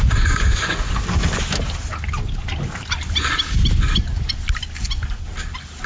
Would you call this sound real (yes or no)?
yes